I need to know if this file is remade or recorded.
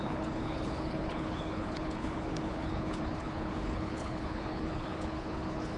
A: remade